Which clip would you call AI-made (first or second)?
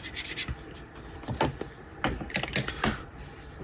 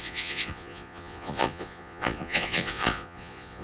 second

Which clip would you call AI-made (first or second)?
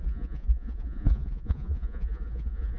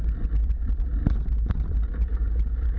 first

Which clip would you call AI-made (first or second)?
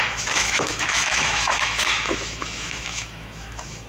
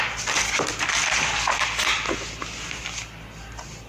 first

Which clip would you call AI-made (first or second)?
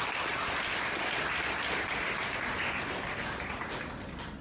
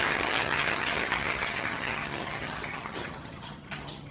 second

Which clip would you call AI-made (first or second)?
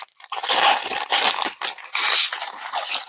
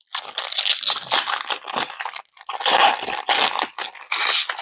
first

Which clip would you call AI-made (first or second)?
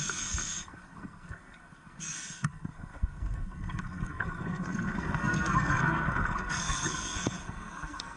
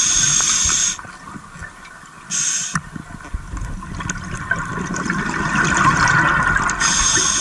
first